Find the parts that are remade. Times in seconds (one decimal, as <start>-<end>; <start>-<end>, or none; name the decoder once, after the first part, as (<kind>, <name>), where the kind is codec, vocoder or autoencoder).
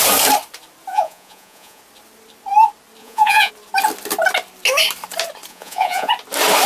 0.9-1.8 (vocoder, Vocos); 3.0-3.5; 5.5-6.1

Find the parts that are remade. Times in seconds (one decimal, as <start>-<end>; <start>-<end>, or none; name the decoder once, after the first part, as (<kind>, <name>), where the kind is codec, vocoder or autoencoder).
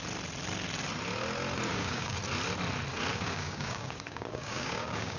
1.7-2.2 (codec, DAC); 3.1-5.2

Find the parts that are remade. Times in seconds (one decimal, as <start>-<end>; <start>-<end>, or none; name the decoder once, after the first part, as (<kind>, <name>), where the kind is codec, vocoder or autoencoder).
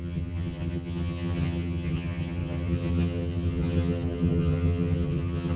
0.0-5.6 (vocoder, HiFi-GAN)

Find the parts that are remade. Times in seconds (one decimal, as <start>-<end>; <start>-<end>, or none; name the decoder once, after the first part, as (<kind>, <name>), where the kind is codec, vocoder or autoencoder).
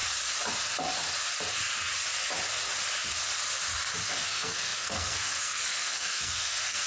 4.1-6.9 (codec, SNAC)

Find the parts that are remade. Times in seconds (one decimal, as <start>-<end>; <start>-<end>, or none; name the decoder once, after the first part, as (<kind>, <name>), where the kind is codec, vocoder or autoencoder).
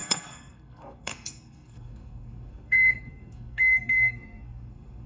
0.0-5.1 (codec, SNAC)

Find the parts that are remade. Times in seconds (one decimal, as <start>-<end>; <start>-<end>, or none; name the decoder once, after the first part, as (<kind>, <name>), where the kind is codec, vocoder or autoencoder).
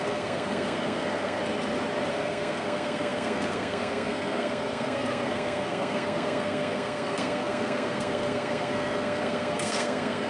0.0-1.4 (codec, SNAC); 2.1-10.3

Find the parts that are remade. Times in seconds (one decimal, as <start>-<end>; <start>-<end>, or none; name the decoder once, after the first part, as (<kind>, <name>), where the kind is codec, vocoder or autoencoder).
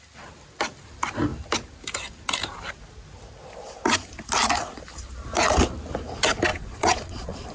6.5-7.5 (vocoder, Vocos)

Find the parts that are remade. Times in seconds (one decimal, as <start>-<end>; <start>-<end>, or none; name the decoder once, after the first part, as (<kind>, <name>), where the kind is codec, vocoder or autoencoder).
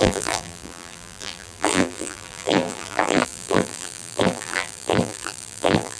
0.0-6.0 (vocoder, BigVGAN v2)